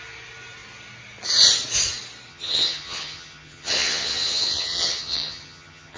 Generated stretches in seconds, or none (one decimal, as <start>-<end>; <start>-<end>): 2.3-6.0